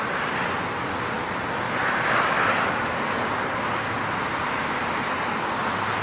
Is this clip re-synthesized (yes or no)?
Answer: no